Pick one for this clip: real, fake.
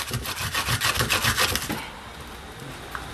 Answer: real